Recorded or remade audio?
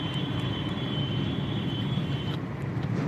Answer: recorded